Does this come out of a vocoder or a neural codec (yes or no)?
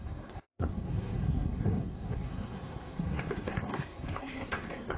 yes